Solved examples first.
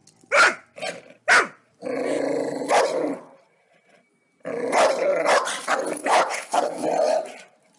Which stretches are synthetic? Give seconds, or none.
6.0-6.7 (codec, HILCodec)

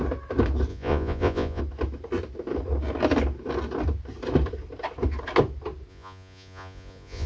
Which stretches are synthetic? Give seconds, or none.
0.7-1.6 (vocoder, Vocos); 5.9-7.3

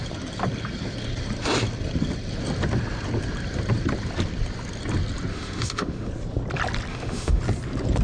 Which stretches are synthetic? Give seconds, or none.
5.3-6.1 (autoencoder, DAC-VAE); 6.9-7.4

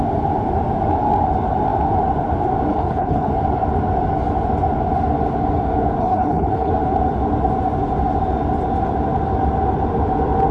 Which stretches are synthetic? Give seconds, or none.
2.7-3.3 (codec, HILCodec); 6.0-6.7

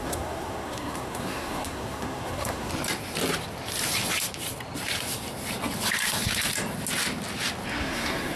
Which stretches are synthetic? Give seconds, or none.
0.0-2.7 (codec, SNAC); 7.7-8.4

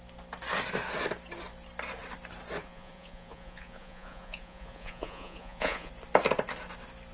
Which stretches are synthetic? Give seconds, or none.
2.6-5.9 (vocoder, Vocos)

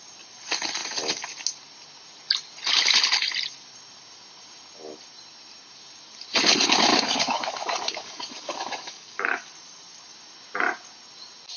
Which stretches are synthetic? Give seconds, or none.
6.9-9.5 (codec, DAC)